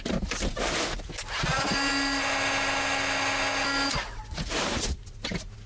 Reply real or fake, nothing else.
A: real